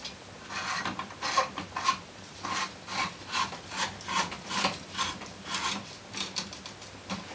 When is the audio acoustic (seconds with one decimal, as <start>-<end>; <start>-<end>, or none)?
0.0-7.3